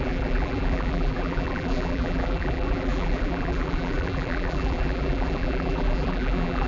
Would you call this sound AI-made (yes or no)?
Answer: yes